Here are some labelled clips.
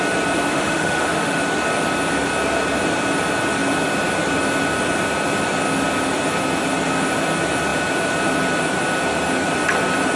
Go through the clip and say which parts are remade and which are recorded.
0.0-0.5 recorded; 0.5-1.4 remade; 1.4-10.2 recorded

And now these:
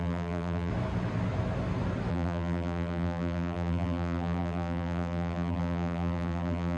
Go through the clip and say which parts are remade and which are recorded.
0.0-0.7 remade; 0.7-2.1 recorded; 2.1-6.8 remade

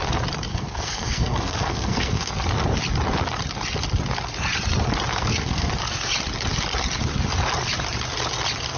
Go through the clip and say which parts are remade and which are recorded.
0.0-0.5 recorded; 0.5-2.3 remade; 2.3-5.1 recorded; 5.1-5.7 remade; 5.7-8.8 recorded

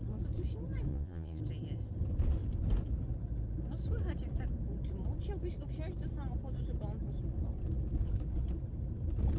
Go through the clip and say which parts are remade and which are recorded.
0.0-0.9 recorded; 0.9-1.4 remade; 1.4-9.4 recorded

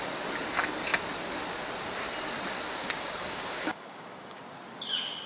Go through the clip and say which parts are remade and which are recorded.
0.0-2.8 recorded; 2.8-4.4 remade; 4.4-5.3 recorded

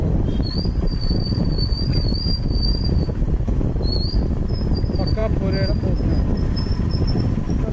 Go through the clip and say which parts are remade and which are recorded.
0.0-5.2 remade; 5.2-7.7 recorded

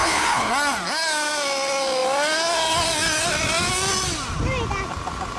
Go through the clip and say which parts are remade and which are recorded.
0.0-0.5 remade; 0.5-5.4 recorded

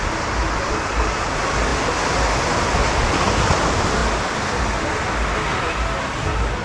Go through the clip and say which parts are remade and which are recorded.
0.0-4.0 recorded; 4.0-4.6 remade; 4.6-6.6 recorded